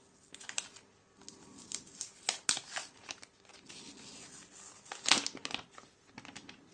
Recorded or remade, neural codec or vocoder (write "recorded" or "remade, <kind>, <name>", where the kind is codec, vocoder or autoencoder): recorded